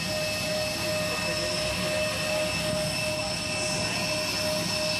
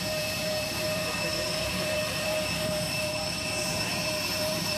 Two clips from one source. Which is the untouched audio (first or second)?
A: first